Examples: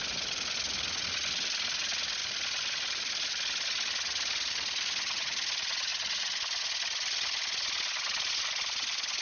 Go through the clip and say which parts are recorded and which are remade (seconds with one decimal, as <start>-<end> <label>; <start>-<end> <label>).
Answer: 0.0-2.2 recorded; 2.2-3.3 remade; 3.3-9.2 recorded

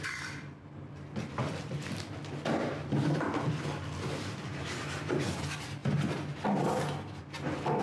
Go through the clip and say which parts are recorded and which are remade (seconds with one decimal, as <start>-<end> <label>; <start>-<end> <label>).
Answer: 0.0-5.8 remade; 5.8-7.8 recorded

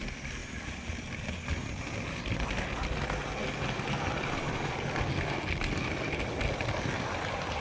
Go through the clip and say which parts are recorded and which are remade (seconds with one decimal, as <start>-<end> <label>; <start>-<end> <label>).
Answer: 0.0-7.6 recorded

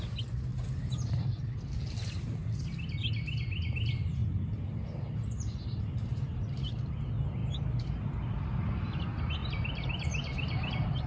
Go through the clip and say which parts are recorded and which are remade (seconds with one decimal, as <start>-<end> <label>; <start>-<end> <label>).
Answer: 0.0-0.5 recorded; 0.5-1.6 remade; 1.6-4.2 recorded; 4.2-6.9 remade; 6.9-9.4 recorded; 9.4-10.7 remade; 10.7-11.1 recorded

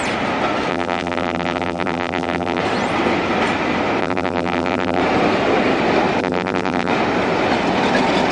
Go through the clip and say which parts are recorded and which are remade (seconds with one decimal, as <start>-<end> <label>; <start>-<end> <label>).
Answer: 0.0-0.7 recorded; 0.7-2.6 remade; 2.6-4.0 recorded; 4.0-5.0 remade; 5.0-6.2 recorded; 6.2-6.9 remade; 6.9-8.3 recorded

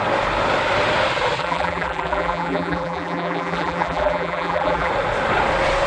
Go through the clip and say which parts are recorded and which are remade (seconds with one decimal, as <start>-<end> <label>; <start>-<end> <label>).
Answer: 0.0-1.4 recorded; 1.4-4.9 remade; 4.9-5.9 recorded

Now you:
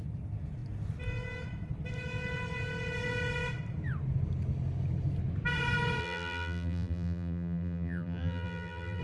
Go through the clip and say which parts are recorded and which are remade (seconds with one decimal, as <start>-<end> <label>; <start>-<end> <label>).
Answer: 0.0-6.0 recorded; 6.0-9.0 remade